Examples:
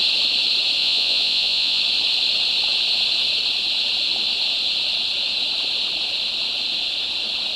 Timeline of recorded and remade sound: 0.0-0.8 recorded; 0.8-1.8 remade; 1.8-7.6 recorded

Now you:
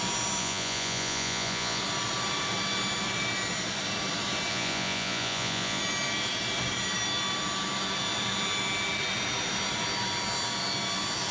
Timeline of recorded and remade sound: 0.0-0.4 recorded; 0.4-1.8 remade; 1.8-4.5 recorded; 4.5-5.8 remade; 5.8-11.3 recorded

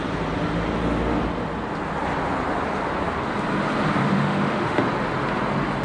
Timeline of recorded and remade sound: 0.0-4.0 recorded; 4.0-4.8 remade; 4.8-5.8 recorded

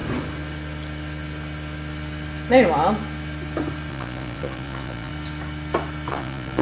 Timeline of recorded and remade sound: 0.0-3.9 recorded; 3.9-5.1 remade; 5.1-6.1 recorded; 6.1-6.6 remade

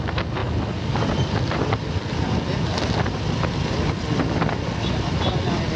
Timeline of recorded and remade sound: 0.0-5.8 recorded

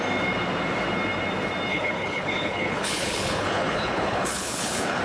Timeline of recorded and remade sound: 0.0-1.7 recorded; 1.7-5.0 remade

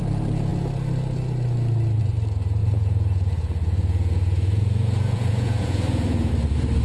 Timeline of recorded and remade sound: 0.0-2.6 recorded; 2.6-6.3 remade; 6.3-6.8 recorded